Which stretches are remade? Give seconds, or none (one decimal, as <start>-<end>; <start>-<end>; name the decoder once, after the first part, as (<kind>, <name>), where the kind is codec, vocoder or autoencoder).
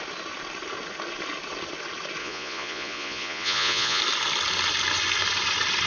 2.2-4.0 (vocoder, Vocos)